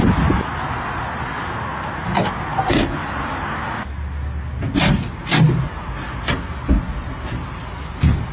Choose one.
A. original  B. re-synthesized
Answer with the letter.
A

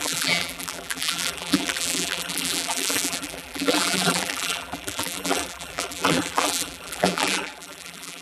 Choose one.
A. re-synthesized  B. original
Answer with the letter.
A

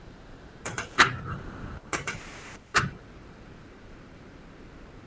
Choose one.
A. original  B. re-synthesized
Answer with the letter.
B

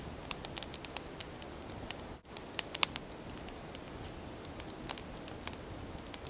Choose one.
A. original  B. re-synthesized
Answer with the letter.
A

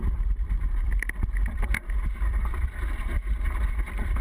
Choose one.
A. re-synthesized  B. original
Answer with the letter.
A